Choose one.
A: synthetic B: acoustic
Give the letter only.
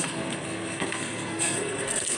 A